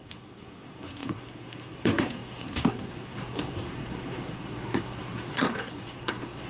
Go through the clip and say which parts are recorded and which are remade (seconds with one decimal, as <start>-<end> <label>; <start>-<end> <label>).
0.0-6.5 remade